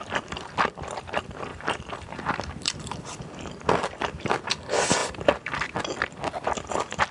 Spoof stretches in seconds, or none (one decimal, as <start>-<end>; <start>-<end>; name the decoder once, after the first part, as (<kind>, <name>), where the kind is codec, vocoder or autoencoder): 1.5-4.4 (vocoder, BigVGAN v2)